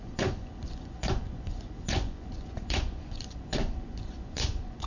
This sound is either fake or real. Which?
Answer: fake